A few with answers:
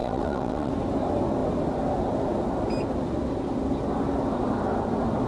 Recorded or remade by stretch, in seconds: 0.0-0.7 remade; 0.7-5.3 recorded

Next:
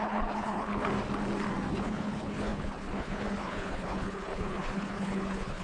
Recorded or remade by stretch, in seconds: 0.0-0.9 remade; 0.9-1.7 recorded; 1.7-5.6 remade

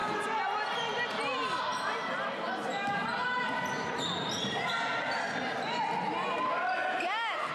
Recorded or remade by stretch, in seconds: 0.0-7.5 recorded

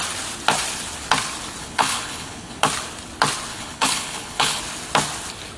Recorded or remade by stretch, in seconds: 0.0-1.6 recorded; 1.6-2.6 remade; 2.6-3.5 recorded; 3.5-4.6 remade; 4.6-5.6 recorded

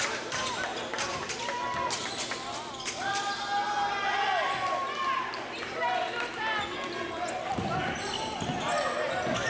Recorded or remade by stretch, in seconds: 0.0-0.7 recorded; 0.7-1.3 remade; 1.3-9.5 recorded

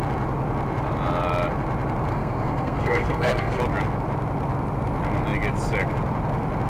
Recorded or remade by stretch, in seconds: 0.0-2.1 recorded; 2.1-3.6 remade; 3.6-6.7 recorded

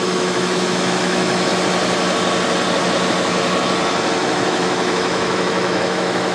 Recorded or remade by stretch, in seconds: 0.0-1.5 remade; 1.5-4.3 recorded; 4.3-6.3 remade

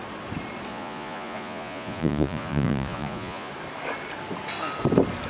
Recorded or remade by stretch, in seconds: 0.0-0.7 recorded; 0.7-3.5 remade; 3.5-5.3 recorded